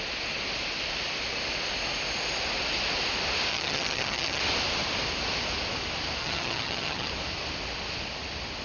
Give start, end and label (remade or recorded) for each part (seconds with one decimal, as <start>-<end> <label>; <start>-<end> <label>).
0.0-3.5 recorded; 3.5-4.4 remade; 4.4-6.2 recorded; 6.2-7.1 remade; 7.1-8.6 recorded